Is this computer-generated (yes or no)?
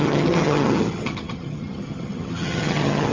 yes